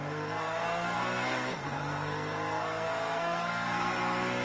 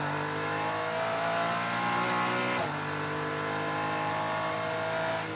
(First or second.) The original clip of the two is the second